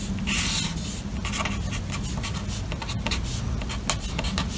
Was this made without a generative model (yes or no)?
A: yes